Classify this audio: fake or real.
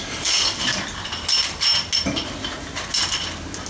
real